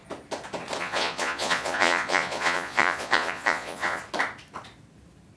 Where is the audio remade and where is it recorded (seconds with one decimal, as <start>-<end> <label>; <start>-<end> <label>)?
0.0-0.8 recorded; 0.8-4.0 remade; 4.0-5.4 recorded